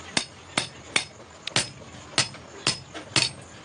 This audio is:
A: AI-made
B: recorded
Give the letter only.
B